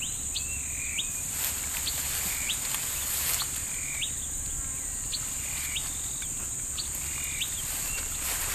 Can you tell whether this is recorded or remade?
recorded